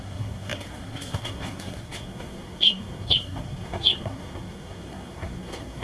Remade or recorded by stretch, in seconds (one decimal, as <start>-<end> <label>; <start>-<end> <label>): 0.0-5.8 remade